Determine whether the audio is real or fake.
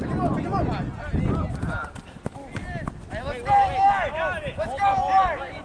real